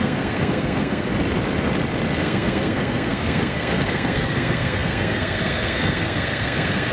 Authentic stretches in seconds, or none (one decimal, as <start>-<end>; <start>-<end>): 1.1-2.2